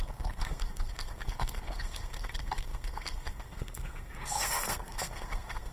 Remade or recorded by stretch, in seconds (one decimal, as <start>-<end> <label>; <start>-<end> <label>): 0.0-5.7 remade